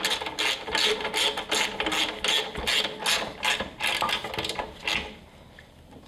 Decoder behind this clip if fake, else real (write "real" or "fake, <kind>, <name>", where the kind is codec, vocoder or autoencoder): real